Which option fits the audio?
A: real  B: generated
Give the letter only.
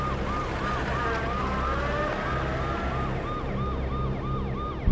A